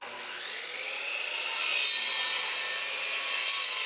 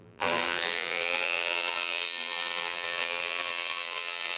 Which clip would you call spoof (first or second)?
second